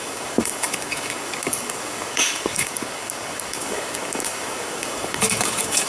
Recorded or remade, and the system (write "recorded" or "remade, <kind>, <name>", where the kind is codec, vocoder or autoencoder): remade, codec, DAC